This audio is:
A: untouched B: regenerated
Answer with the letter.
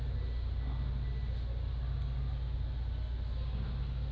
A